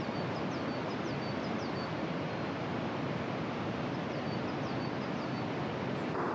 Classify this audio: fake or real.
real